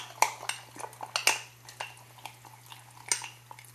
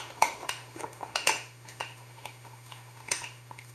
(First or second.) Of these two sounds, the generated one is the second